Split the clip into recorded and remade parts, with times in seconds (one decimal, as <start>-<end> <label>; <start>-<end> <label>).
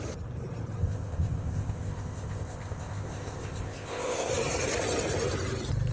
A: 0.0-0.8 recorded; 0.8-4.3 remade; 4.3-5.9 recorded